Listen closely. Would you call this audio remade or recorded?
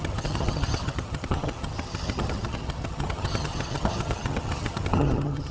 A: remade